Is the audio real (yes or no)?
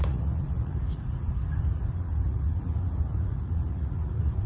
no